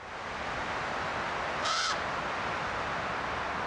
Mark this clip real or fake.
real